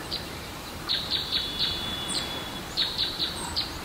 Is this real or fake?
fake